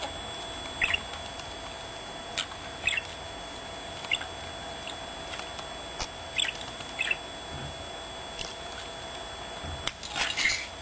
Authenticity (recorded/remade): recorded